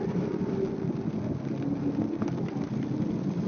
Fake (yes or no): no